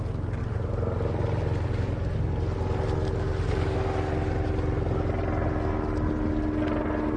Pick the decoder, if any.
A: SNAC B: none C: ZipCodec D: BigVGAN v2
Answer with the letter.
B